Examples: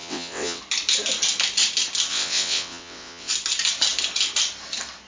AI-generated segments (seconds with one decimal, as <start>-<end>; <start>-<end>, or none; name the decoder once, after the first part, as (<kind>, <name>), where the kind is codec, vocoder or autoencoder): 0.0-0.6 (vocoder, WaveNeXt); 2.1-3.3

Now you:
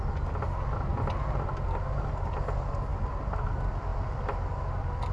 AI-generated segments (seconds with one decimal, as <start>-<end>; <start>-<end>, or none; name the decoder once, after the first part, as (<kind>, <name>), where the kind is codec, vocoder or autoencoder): none

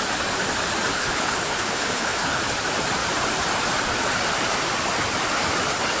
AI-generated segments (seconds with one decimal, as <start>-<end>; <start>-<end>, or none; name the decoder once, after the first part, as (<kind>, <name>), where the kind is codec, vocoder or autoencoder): 0.9-2.4 (codec, HILCodec)

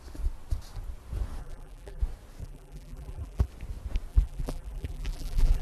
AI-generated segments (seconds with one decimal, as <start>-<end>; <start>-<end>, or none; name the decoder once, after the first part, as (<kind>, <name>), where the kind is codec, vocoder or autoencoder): 1.4-2.0 (vocoder, BigVGAN v2); 2.4-3.5; 4.1-5.6